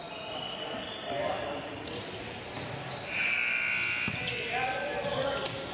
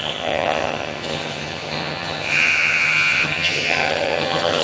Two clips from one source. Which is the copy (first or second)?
second